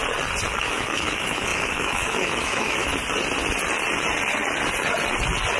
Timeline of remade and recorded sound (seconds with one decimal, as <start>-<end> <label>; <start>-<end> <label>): 0.0-0.5 recorded; 0.5-2.9 remade; 2.9-5.6 recorded